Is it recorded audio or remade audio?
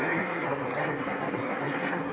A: remade